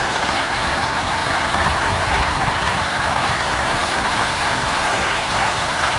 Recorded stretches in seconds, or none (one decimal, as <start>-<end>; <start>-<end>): none